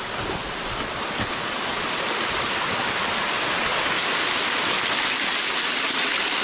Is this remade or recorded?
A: recorded